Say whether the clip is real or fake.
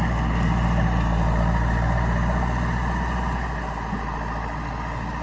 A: real